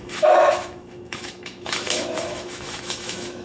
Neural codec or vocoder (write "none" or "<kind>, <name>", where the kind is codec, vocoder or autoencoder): autoencoder, DAC-VAE